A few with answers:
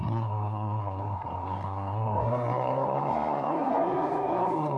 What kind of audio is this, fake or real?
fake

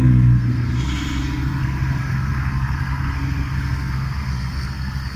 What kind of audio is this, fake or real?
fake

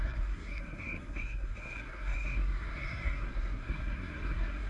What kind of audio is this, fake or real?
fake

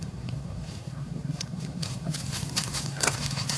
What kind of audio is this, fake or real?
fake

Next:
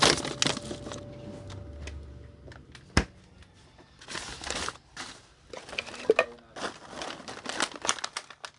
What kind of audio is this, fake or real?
real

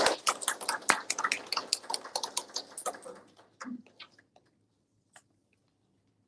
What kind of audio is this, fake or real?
real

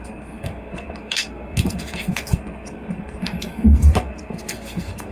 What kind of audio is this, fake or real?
fake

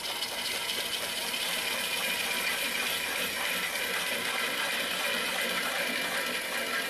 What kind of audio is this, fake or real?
real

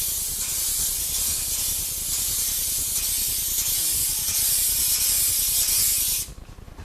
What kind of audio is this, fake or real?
real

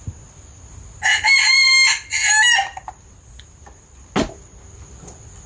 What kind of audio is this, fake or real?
real